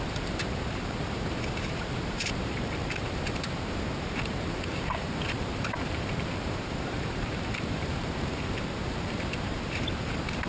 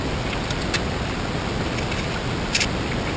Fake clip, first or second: first